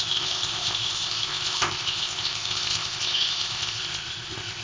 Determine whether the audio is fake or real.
fake